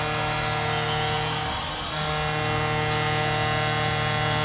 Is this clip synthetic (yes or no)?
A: no